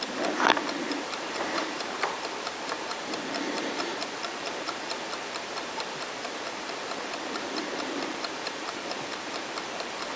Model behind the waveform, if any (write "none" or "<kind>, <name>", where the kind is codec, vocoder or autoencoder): vocoder, BigVGAN v2